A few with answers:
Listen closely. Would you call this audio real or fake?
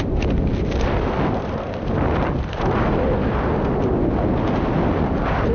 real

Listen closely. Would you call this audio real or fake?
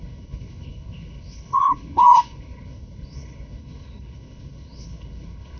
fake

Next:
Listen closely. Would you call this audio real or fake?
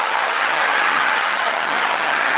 fake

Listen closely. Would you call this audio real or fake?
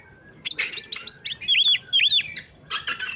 real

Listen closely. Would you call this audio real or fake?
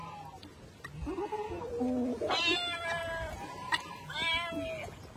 real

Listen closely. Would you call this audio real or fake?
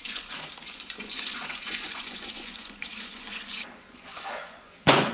fake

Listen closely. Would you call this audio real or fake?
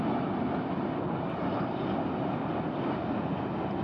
real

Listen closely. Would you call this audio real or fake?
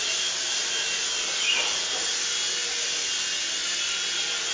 real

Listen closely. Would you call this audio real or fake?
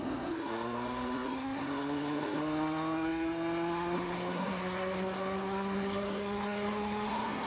fake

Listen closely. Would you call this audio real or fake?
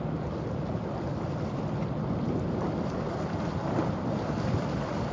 real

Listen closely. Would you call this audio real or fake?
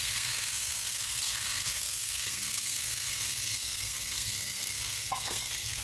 fake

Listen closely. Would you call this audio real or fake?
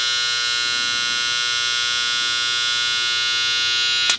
real